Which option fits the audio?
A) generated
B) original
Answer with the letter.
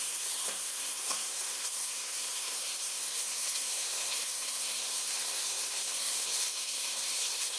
A